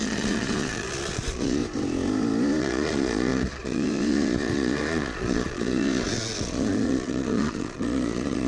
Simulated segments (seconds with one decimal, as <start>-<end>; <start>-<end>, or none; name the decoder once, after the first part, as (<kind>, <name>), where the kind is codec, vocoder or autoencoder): 0.0-1.6 (vocoder, Vocos); 2.6-8.5